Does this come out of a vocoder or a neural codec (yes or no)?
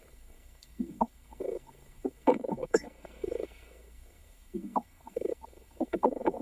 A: yes